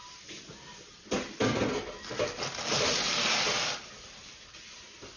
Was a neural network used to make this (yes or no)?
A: no